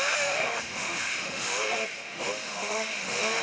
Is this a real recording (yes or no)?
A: no